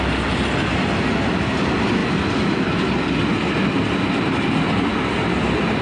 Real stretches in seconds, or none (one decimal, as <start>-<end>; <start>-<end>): 0.0-5.8

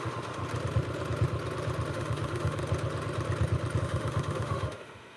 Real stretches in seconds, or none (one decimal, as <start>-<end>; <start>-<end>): 0.4-1.9; 2.6-3.8

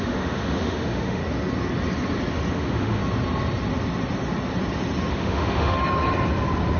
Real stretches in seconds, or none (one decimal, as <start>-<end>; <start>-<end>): 1.2-2.5; 3.0-5.1; 5.8-6.8

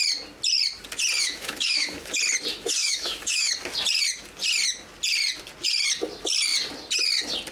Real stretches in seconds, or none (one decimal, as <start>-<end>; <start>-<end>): 0.0-1.2; 2.1-2.5; 3.5-7.5

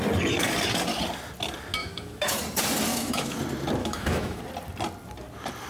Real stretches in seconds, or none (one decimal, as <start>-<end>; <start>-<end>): 0.0-1.8; 2.4-2.9; 3.4-3.8; 4.4-5.7

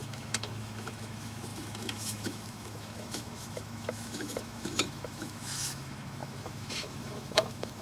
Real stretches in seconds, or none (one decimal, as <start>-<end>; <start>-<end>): none

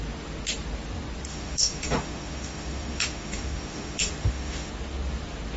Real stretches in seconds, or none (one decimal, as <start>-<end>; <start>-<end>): 0.0-1.3; 4.7-5.6